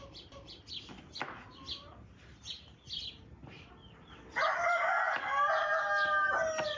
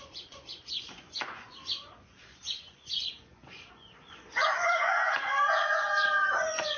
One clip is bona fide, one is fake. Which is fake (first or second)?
second